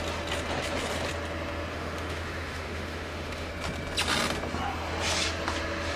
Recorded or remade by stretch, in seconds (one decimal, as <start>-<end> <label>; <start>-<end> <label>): 0.0-1.7 recorded; 1.7-3.5 remade; 3.5-6.0 recorded